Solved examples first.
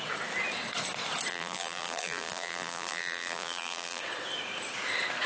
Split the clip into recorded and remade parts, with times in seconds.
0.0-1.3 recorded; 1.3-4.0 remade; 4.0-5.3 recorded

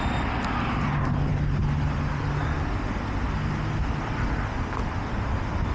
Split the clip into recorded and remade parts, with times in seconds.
0.0-5.7 recorded

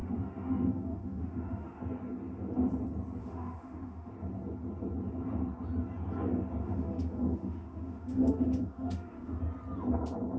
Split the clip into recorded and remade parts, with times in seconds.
0.0-1.8 remade; 1.8-3.2 recorded; 3.2-4.1 remade; 4.1-6.6 recorded; 6.6-9.4 remade; 9.4-10.4 recorded

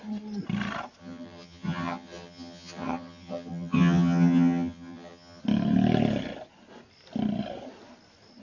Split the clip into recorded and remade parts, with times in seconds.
0.0-1.0 recorded; 1.0-5.4 remade; 5.4-8.4 recorded

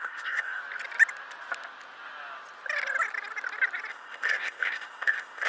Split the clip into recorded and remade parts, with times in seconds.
0.0-0.6 remade; 0.6-3.9 recorded; 3.9-5.5 remade

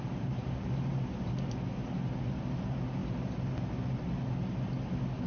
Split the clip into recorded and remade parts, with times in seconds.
0.0-5.3 recorded